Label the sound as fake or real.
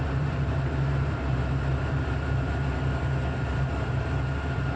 fake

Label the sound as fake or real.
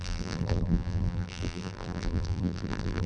fake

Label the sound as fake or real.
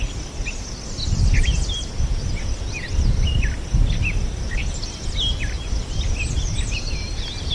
real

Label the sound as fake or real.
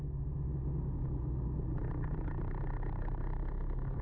real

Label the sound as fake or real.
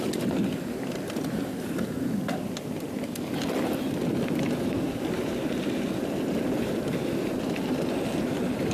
real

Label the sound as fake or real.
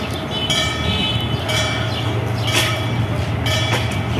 real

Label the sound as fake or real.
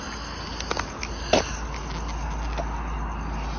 real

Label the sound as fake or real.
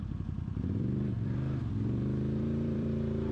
fake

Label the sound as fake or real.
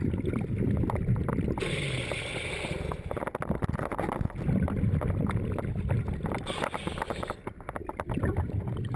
real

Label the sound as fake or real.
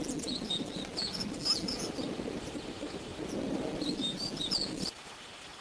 real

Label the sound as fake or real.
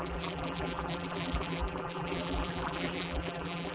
fake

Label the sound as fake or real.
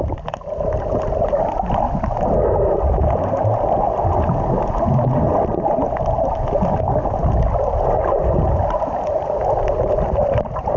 real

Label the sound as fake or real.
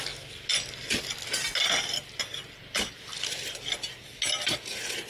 real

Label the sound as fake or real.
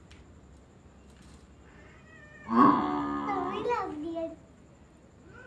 real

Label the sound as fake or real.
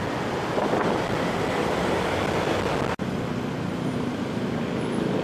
real